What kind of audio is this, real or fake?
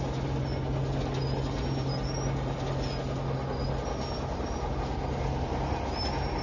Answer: real